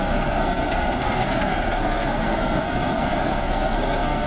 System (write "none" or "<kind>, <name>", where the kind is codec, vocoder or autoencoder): codec, SNAC